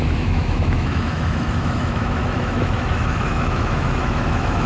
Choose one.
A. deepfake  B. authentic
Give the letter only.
A